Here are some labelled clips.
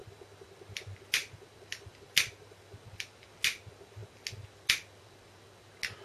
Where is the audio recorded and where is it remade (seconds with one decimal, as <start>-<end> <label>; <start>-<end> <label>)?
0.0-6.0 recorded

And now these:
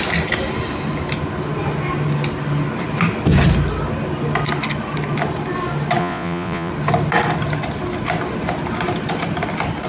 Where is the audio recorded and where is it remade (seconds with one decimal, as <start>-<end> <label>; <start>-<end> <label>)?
0.0-6.0 recorded; 6.0-6.7 remade; 6.7-9.9 recorded

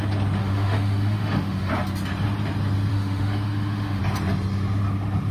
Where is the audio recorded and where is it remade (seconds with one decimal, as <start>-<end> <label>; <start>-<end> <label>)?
0.0-0.4 recorded; 0.4-1.7 remade; 1.7-2.9 recorded; 2.9-4.0 remade; 4.0-5.3 recorded